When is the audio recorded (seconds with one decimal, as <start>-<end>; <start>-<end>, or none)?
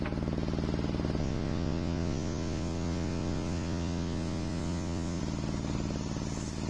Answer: 0.0-1.2; 5.2-6.7